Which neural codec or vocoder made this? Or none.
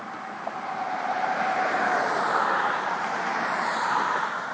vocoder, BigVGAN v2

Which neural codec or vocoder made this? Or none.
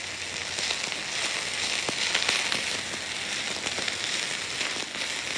none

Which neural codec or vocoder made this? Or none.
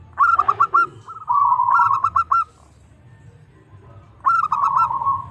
none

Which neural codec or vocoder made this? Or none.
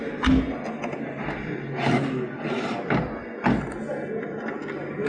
none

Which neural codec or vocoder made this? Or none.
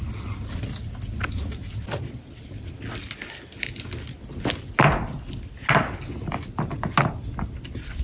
none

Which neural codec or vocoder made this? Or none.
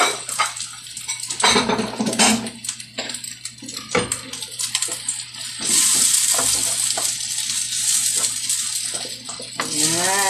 none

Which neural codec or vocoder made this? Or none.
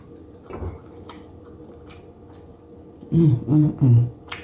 none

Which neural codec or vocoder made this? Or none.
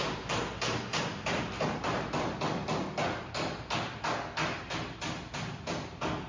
none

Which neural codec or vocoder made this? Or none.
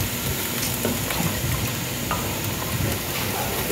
none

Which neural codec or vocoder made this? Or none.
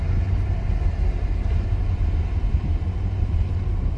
none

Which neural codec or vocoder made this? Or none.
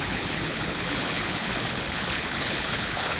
codec, HILCodec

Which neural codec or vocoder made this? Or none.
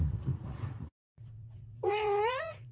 vocoder, Vocos